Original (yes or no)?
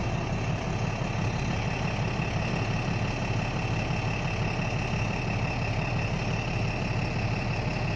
yes